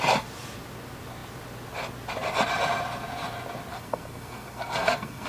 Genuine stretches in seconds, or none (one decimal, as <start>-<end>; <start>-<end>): 0.0-3.7

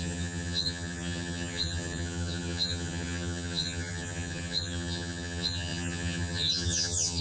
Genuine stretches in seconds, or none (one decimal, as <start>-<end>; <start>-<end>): none

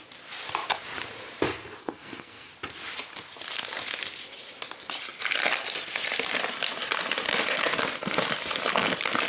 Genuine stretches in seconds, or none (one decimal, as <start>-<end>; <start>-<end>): 0.0-1.8; 2.5-9.3

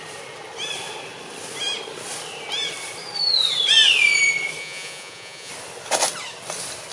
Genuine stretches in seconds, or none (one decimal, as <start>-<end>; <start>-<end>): 0.0-4.6; 5.5-6.9

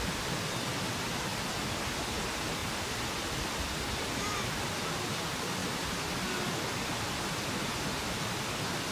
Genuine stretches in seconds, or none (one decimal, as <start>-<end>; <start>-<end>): 0.0-8.9

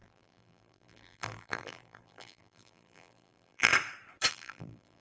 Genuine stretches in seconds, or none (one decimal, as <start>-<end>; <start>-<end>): 3.7-4.3